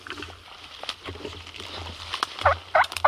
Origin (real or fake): real